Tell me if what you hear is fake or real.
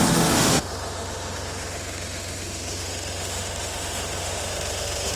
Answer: fake